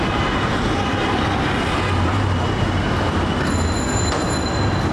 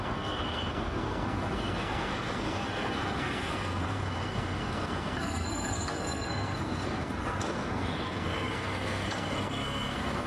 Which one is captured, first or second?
first